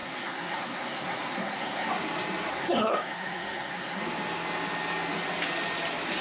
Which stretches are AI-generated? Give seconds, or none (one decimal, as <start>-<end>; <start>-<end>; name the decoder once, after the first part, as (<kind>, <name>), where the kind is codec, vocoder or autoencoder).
0.0-1.9 (codec, SNAC); 2.5-4.0